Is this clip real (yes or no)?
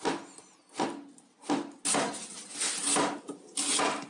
yes